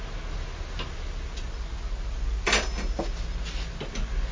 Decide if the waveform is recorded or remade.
recorded